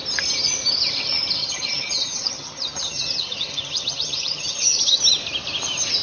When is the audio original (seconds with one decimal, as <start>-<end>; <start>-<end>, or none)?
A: 0.0-1.4; 5.0-6.0